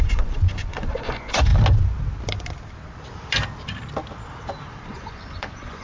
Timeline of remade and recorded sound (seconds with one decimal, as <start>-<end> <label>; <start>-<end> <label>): 0.0-1.5 remade; 1.5-4.8 recorded; 4.8-5.8 remade